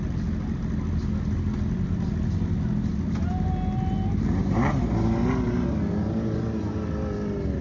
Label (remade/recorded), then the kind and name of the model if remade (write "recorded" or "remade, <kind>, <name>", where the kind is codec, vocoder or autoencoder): recorded